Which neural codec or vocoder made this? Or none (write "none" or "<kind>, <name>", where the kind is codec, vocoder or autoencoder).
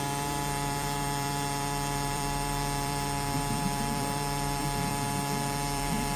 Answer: vocoder, BigVGAN v2